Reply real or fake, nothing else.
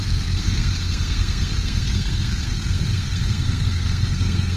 fake